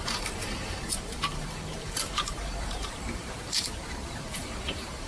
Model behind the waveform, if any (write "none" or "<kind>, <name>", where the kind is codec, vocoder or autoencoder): vocoder, BigVGAN v2